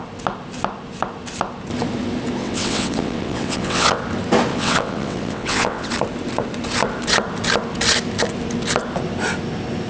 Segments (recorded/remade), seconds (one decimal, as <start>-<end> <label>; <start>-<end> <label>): 0.0-2.4 recorded; 2.4-4.0 remade; 4.0-4.5 recorded; 4.5-5.9 remade; 5.9-9.9 recorded